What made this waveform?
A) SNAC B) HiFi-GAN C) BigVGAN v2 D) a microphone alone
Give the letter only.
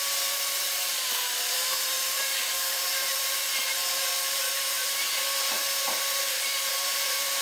C